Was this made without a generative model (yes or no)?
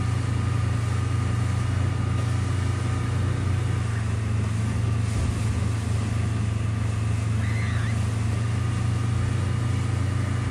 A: yes